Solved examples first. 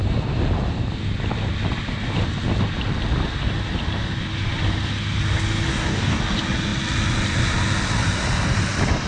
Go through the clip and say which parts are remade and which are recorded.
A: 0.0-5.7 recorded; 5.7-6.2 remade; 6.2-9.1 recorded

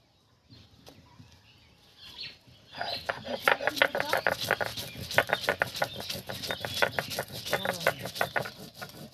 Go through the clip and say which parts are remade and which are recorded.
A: 0.0-9.1 recorded

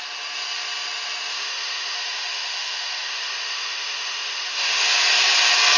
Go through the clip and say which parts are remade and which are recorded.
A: 0.0-1.3 recorded; 1.3-4.8 remade; 4.8-5.8 recorded